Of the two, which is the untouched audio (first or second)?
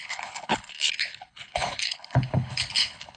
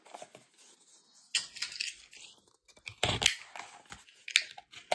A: second